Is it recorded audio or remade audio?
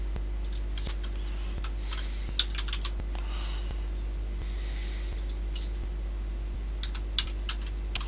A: recorded